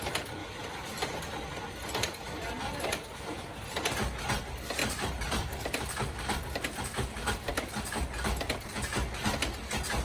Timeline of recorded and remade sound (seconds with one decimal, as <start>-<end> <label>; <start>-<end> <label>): 0.0-4.8 recorded; 4.8-6.4 remade; 6.4-10.0 recorded